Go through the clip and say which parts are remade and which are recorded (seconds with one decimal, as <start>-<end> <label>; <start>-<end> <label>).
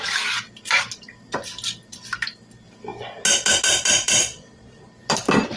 0.0-4.2 recorded; 4.2-4.9 remade; 4.9-5.6 recorded